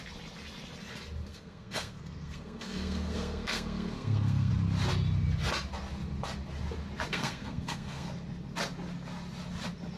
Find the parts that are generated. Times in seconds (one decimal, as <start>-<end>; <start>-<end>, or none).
1.3-4.5; 7.1-8.1